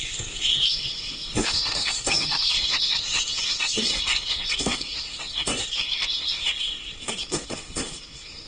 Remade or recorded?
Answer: remade